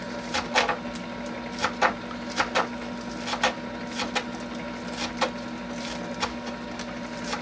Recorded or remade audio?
recorded